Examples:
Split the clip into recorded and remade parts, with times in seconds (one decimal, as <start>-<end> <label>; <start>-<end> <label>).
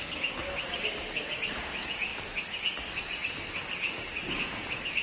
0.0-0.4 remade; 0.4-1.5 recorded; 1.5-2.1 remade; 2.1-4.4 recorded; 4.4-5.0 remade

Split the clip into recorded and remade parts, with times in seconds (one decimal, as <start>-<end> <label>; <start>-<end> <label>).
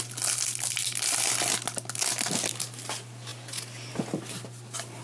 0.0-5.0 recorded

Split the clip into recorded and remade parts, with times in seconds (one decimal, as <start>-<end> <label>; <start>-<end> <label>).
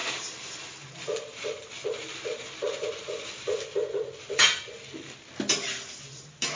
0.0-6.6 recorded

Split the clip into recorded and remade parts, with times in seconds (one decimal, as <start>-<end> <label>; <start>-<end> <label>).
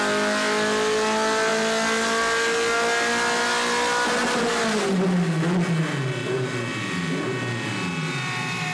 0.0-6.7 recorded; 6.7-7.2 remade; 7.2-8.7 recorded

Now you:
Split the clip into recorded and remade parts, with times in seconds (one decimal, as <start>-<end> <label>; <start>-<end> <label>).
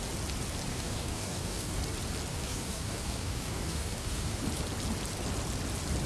0.0-0.7 recorded; 0.7-1.8 remade; 1.8-2.3 recorded; 2.3-4.4 remade; 4.4-6.1 recorded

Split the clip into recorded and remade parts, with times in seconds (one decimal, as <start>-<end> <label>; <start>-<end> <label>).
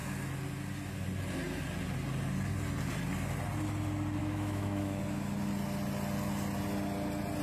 0.0-4.2 recorded; 4.2-5.0 remade; 5.0-7.4 recorded